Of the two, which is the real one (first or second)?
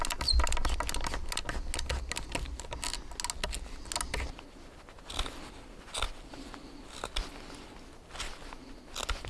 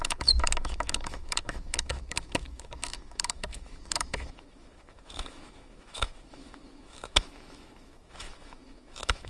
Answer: first